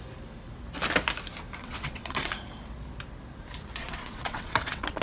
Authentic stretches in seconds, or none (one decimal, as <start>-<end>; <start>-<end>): 0.0-1.6; 2.3-3.8